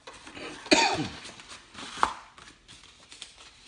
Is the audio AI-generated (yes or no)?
no